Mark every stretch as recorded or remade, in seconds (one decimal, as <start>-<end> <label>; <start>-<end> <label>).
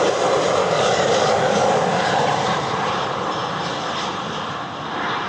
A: 0.0-0.6 recorded; 0.6-2.1 remade; 2.1-5.3 recorded